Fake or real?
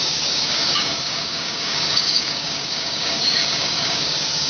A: fake